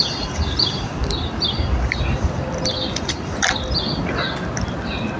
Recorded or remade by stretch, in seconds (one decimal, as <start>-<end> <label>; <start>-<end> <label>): 0.0-5.2 recorded